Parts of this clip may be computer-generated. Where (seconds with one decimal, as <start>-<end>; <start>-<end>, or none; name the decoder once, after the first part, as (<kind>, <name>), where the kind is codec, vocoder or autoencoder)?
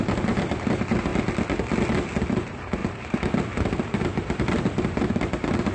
0.0-1.1 (vocoder, BigVGAN v2); 2.3-5.7